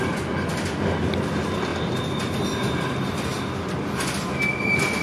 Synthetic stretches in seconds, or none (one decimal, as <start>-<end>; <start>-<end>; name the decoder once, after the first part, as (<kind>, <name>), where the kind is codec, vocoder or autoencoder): none